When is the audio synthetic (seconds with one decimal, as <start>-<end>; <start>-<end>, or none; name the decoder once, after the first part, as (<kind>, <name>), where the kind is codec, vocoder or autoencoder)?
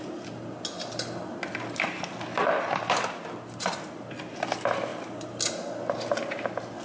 none